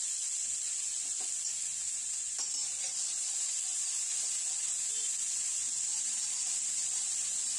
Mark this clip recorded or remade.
recorded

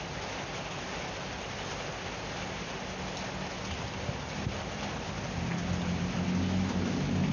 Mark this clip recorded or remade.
recorded